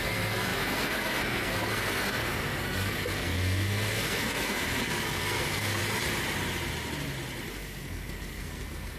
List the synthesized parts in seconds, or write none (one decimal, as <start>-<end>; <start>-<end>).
0.0-5.8; 7.5-9.0